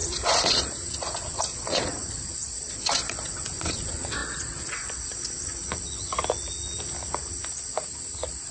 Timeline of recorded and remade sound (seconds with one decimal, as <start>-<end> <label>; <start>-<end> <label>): 0.0-5.6 remade; 5.6-8.5 recorded